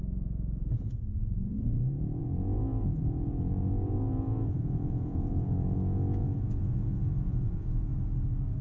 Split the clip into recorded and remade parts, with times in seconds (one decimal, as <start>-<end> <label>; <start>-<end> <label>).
0.0-7.9 remade; 7.9-8.6 recorded